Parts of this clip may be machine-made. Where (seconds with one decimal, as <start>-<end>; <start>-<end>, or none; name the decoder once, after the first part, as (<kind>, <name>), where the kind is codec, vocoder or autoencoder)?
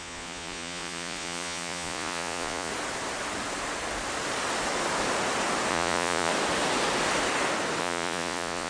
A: 0.0-2.7 (vocoder, Vocos); 5.7-6.3; 7.8-8.7